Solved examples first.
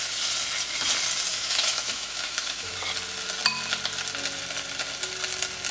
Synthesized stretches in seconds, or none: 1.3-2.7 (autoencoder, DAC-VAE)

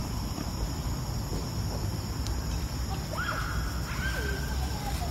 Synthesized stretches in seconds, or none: 0.0-0.9 (vocoder, BigVGAN v2); 1.3-3.4

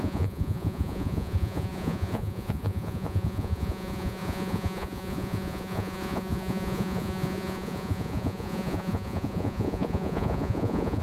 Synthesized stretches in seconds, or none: 0.0-11.0 (vocoder, Vocos)

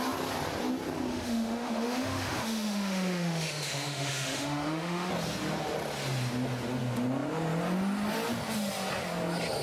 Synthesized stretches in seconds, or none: 1.1-5.1 (autoencoder, DAC-VAE)

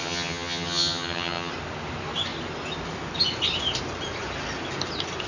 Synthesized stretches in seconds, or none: 0.0-1.5 (vocoder, HiFi-GAN)